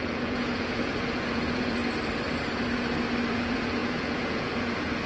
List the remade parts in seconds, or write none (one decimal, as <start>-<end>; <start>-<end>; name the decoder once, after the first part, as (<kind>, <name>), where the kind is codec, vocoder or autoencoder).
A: 0.0-1.8 (vocoder, Vocos); 3.3-5.1